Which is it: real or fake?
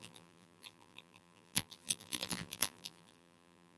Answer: fake